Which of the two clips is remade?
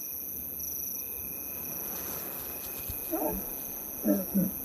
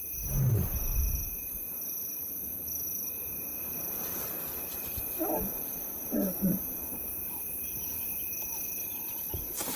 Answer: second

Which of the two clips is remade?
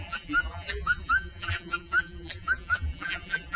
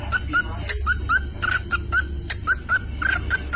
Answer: first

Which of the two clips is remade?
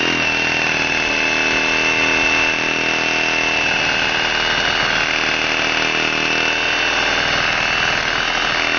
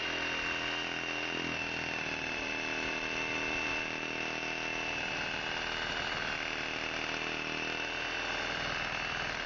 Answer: second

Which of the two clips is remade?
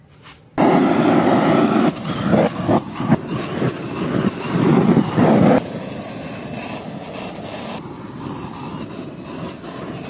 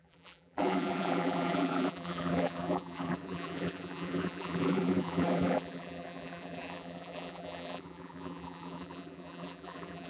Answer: second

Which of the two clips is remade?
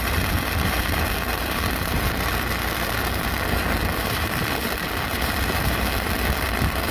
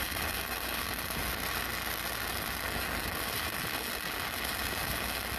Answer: first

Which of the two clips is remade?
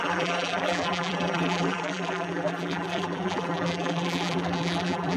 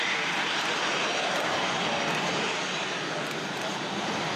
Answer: first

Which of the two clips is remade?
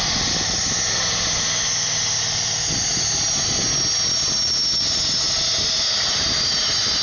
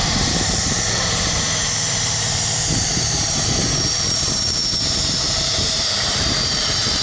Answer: second